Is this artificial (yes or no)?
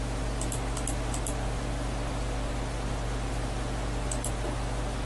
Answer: no